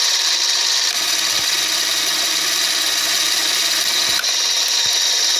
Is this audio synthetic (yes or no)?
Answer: yes